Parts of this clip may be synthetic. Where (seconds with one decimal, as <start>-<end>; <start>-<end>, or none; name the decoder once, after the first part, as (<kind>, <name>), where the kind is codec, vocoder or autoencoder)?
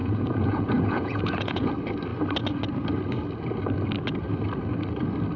0.0-1.7 (vocoder, Vocos)